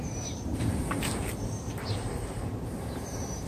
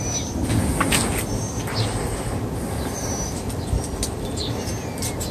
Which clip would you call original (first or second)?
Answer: second